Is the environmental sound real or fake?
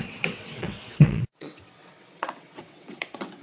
fake